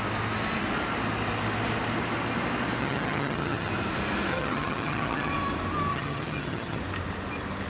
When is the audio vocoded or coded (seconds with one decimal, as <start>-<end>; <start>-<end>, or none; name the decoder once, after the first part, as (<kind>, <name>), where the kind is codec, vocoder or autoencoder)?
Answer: 2.8-3.7 (vocoder, HiFi-GAN); 4.3-5.3; 5.9-6.8